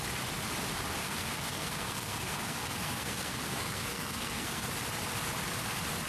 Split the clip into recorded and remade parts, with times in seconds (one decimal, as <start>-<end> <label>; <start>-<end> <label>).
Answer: 0.0-1.0 recorded; 1.0-4.7 remade; 4.7-6.1 recorded